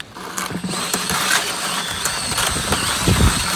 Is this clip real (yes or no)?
no